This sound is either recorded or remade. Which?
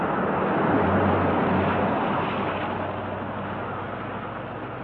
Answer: recorded